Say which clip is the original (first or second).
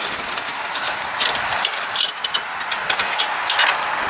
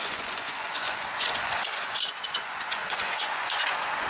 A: first